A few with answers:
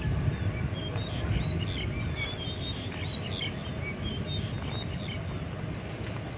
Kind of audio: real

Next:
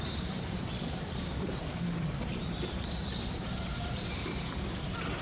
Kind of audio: fake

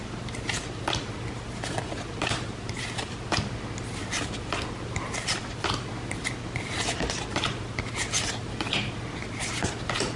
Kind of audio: fake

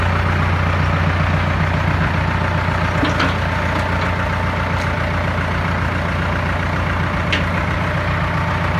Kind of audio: real